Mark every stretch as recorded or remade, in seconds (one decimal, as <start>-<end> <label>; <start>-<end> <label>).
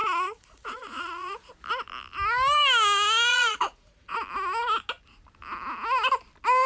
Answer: 0.0-1.5 remade; 1.5-3.3 recorded; 3.3-4.2 remade; 4.2-6.7 recorded